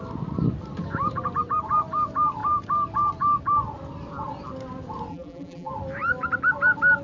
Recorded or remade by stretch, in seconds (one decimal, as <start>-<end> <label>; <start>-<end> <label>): 0.0-5.1 recorded; 5.1-5.7 remade; 5.7-7.0 recorded